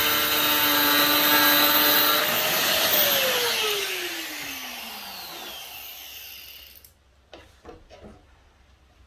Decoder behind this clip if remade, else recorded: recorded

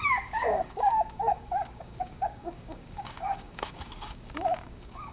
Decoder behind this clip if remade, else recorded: remade, codec, DAC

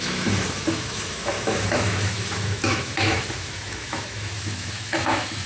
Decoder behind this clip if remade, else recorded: remade, autoencoder, DAC-VAE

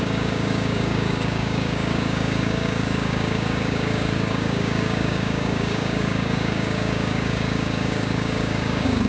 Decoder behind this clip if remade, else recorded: remade, codec, DAC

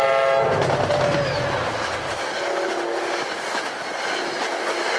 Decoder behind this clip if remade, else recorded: recorded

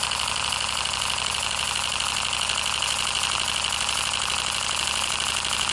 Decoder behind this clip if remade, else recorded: recorded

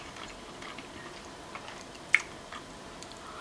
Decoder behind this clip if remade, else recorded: recorded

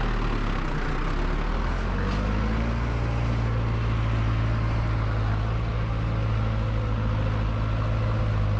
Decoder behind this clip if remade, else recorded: recorded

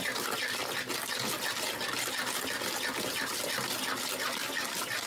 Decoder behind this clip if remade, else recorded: recorded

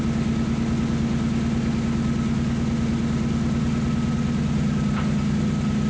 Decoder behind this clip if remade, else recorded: recorded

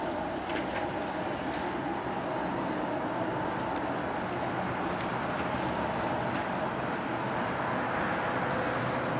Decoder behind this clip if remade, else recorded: recorded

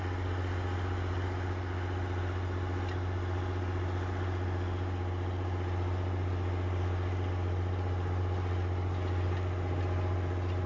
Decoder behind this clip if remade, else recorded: recorded